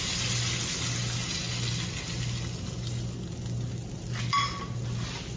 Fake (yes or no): no